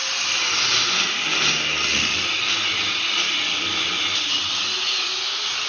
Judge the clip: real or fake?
real